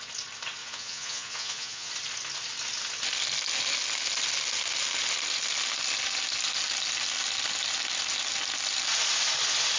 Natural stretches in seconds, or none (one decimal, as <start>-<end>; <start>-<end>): 0.0-0.6; 1.9-9.8